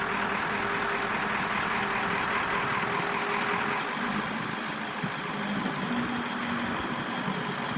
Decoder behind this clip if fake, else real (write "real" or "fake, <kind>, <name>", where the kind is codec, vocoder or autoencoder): real